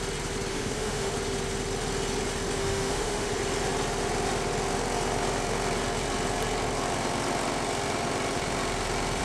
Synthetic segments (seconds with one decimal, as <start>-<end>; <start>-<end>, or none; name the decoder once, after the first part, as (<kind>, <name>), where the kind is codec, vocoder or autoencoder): 0.5-1.1 (autoencoder, DAC-VAE); 2.6-3.3